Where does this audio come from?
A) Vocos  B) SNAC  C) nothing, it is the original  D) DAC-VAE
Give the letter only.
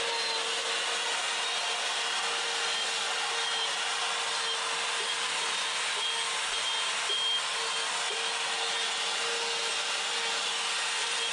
C